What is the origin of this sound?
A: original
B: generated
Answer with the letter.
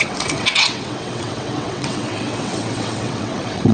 B